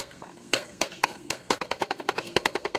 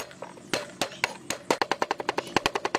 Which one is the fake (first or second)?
first